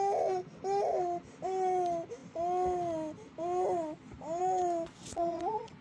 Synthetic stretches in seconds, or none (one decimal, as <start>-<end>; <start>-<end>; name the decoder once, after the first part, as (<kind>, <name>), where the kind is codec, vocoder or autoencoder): 5.0-5.8 (vocoder, WaveNeXt)